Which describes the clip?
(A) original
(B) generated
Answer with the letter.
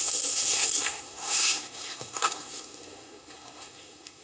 B